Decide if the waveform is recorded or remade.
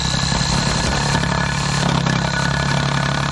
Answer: recorded